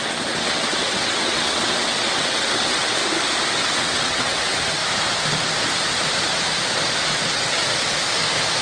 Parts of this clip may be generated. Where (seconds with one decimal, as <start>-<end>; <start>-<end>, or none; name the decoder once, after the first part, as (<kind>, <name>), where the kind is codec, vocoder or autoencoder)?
0.0-3.0 (vocoder, WaveNeXt); 3.6-4.8; 7.1-7.6